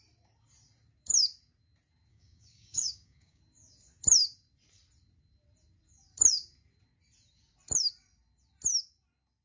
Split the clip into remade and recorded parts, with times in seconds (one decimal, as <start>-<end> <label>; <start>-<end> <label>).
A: 0.0-2.1 recorded; 2.1-3.4 remade; 3.4-9.4 recorded